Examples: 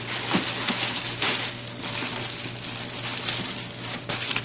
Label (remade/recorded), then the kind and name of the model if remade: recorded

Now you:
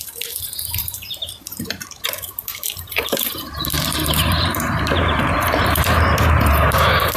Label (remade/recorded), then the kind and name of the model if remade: remade, vocoder, BigVGAN v2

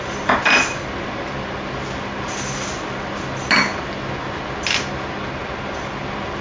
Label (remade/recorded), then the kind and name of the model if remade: recorded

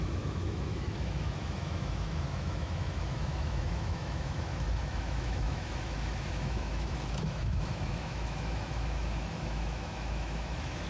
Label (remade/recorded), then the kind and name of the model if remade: remade, autoencoder, DAC-VAE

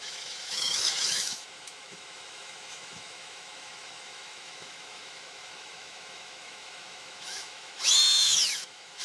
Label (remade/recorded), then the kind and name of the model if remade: remade, autoencoder, DAC-VAE